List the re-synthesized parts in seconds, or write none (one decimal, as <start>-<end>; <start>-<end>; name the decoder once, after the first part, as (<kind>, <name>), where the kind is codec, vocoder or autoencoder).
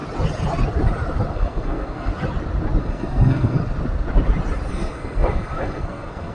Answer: 1.3-2.1 (codec, SNAC); 2.8-3.6; 4.7-6.3